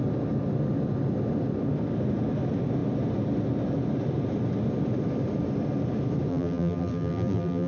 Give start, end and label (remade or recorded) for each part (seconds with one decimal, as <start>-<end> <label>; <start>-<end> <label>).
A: 0.0-6.3 recorded; 6.3-7.7 remade